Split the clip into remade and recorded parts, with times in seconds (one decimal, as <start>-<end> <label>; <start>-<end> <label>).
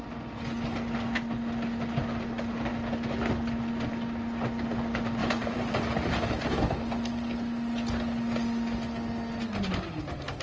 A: 0.0-5.2 recorded; 5.2-5.8 remade; 5.8-10.4 recorded